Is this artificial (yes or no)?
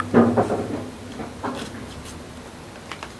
no